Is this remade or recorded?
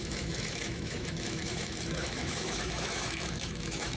remade